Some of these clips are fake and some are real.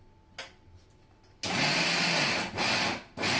real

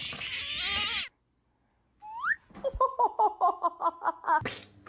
real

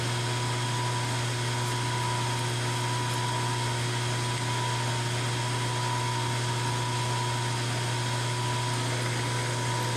real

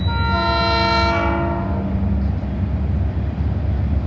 real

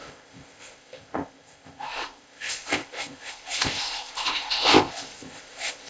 fake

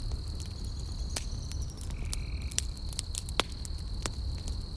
real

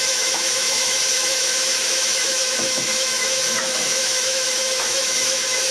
fake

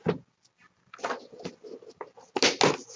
real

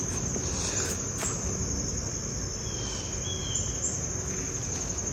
real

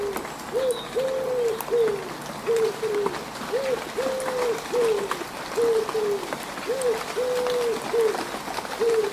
real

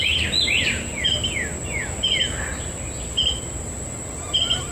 real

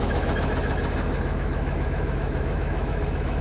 fake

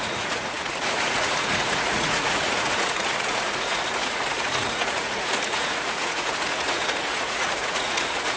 fake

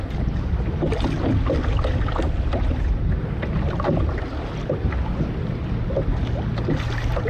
real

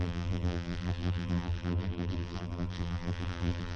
fake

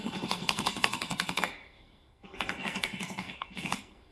fake